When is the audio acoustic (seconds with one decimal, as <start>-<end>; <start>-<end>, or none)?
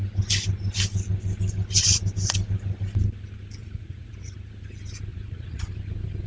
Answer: 0.0-3.6; 4.5-5.1; 5.7-6.3